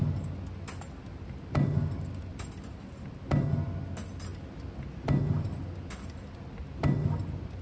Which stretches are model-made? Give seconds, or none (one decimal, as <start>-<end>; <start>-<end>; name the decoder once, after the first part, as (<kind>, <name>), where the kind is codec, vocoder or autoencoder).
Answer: none